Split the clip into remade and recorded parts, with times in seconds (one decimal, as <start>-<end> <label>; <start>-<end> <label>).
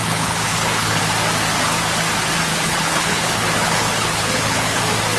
0.0-1.0 remade; 1.0-2.5 recorded; 2.5-4.8 remade; 4.8-5.2 recorded